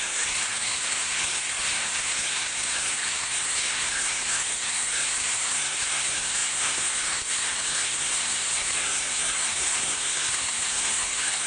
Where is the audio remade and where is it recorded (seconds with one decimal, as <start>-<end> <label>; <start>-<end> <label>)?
0.0-11.5 remade